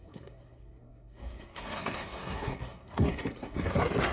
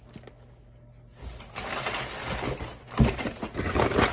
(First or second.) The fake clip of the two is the first